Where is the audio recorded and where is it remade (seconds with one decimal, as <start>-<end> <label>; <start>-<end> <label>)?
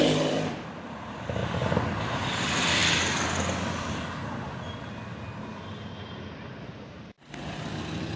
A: 0.0-1.4 remade; 1.4-2.0 recorded; 2.0-2.8 remade; 2.8-6.6 recorded; 6.6-8.2 remade